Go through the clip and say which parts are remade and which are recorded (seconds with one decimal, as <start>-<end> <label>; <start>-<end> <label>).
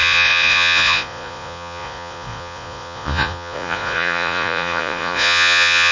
0.0-5.9 remade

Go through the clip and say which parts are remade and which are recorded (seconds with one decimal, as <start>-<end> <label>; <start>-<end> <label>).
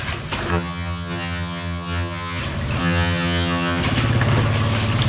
0.0-0.5 recorded; 0.5-2.4 remade; 2.4-2.8 recorded; 2.8-3.8 remade; 3.8-5.1 recorded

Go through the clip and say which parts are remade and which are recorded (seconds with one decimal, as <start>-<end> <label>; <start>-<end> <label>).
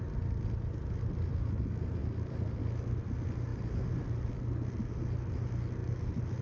0.0-2.0 recorded; 2.0-2.6 remade; 2.6-3.5 recorded; 3.5-4.3 remade; 4.3-5.8 recorded; 5.8-6.4 remade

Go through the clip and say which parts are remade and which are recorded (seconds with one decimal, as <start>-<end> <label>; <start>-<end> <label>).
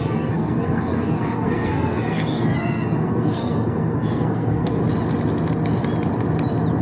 0.0-4.8 remade; 4.8-6.8 recorded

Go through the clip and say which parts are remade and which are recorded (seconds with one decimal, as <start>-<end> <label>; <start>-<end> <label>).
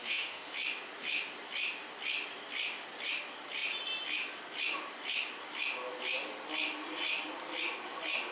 0.0-0.5 remade; 0.5-8.3 recorded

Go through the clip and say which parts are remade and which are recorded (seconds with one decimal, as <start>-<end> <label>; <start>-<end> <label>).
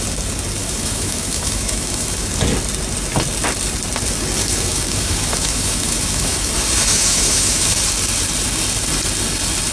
0.0-0.6 recorded; 0.6-2.3 remade; 2.3-4.4 recorded; 4.4-6.5 remade; 6.5-6.9 recorded; 6.9-7.8 remade; 7.8-9.7 recorded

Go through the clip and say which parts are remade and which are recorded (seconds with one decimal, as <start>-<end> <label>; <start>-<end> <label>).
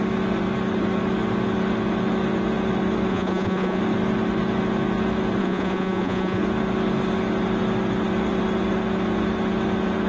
0.0-3.1 recorded; 3.1-3.8 remade; 3.8-5.4 recorded; 5.4-6.4 remade; 6.4-10.1 recorded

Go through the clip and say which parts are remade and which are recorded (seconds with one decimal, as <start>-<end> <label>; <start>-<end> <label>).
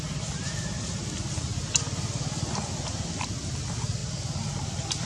0.0-5.1 recorded